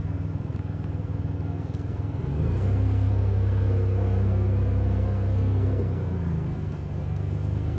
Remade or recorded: remade